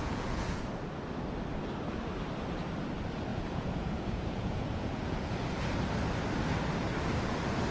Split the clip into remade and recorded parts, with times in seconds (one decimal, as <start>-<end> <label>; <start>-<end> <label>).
0.0-0.6 remade; 0.6-3.3 recorded; 3.3-5.4 remade; 5.4-7.7 recorded